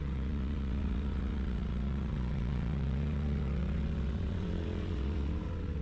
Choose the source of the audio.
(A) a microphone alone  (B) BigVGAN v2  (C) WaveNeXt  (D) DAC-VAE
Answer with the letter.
C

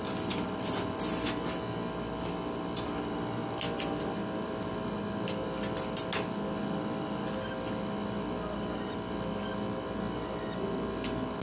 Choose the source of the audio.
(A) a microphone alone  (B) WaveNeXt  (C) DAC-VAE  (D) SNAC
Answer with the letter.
A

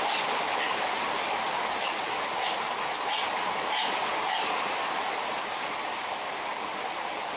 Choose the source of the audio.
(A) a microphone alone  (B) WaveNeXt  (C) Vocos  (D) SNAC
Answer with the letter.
A